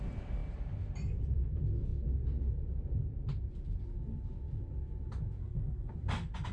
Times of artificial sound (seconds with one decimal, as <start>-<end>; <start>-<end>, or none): 5.4-5.9